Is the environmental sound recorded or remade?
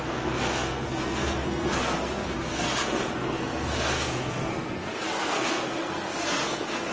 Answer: remade